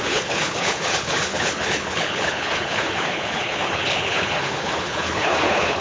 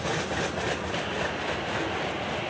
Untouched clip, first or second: second